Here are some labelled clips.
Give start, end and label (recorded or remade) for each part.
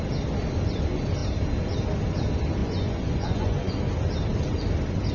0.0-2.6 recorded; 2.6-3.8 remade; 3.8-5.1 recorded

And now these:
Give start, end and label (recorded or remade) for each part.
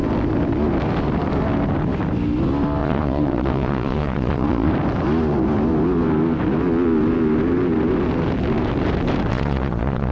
0.0-2.8 recorded; 2.8-4.7 remade; 4.7-9.3 recorded; 9.3-10.1 remade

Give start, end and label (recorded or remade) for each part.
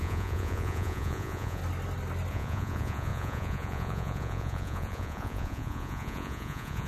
0.0-1.6 remade; 1.6-2.3 recorded; 2.3-6.9 remade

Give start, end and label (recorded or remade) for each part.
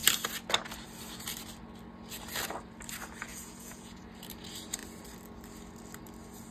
0.0-3.3 recorded; 3.3-4.0 remade; 4.0-6.5 recorded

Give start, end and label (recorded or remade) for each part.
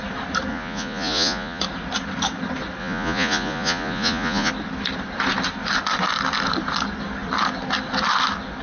0.0-0.5 recorded; 0.5-1.6 remade; 1.6-2.8 recorded; 2.8-4.5 remade; 4.5-8.6 recorded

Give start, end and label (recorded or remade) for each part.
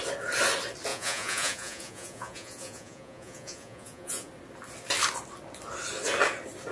0.0-0.9 recorded; 0.9-4.3 remade; 4.3-6.7 recorded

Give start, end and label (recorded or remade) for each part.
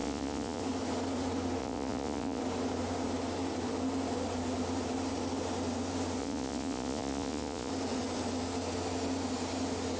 0.0-0.6 remade; 0.6-1.6 recorded; 1.6-2.4 remade; 2.4-6.2 recorded; 6.2-7.7 remade; 7.7-10.0 recorded